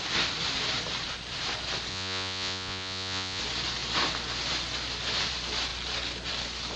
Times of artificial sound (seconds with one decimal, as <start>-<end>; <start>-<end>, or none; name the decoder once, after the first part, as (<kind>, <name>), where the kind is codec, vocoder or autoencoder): 1.9-3.4 (vocoder, Vocos)